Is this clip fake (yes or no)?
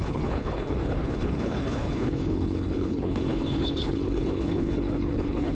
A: yes